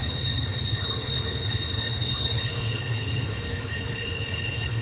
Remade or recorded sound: remade